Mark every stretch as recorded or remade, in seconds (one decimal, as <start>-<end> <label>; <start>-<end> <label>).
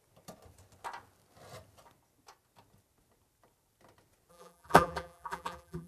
0.0-4.3 recorded; 4.3-5.9 remade